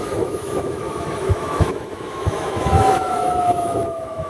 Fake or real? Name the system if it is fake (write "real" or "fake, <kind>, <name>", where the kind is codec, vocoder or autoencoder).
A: fake, autoencoder, DAC-VAE